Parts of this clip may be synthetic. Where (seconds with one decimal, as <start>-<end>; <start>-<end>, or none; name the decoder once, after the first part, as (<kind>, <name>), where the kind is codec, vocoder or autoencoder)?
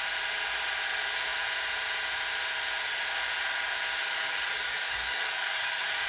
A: 4.0-6.1 (codec, DAC)